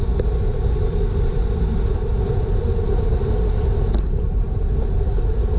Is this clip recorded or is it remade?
recorded